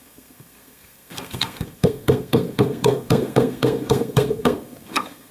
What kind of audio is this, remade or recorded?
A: remade